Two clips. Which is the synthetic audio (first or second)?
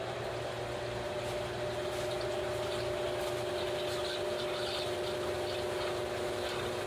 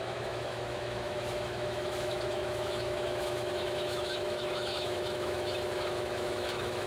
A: second